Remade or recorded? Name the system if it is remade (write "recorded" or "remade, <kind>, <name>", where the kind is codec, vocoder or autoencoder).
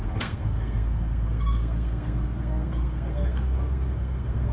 remade, codec, SNAC